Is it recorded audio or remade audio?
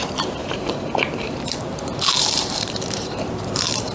remade